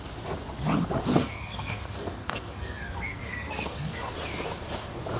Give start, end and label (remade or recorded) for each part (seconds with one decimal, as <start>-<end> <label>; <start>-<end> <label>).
0.0-1.1 recorded; 1.1-4.1 remade; 4.1-5.2 recorded